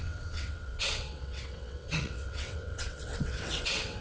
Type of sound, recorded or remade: remade